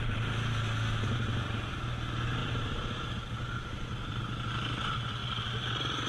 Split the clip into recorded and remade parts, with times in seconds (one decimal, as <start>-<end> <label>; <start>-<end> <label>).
0.0-2.4 recorded; 2.4-4.2 remade; 4.2-6.1 recorded